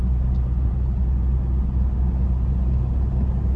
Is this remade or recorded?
recorded